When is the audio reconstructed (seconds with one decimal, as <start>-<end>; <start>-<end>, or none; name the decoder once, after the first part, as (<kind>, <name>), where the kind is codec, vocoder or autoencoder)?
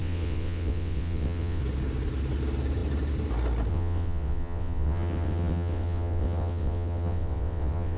0.0-1.6 (vocoder, WaveNeXt); 3.7-8.0